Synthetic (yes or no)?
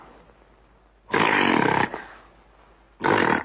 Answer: no